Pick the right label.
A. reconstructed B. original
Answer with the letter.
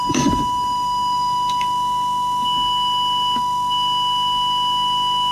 A